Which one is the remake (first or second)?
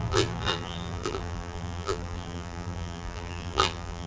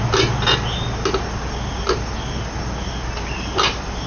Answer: first